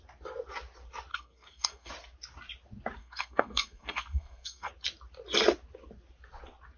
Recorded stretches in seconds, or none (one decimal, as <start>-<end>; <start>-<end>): 0.0-1.1; 1.9-3.0; 4.7-6.8